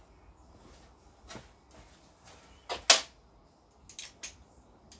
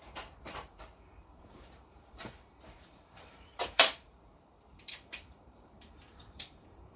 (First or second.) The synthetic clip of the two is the second